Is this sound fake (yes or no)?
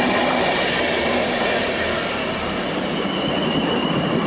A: no